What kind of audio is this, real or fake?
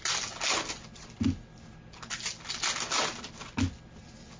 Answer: real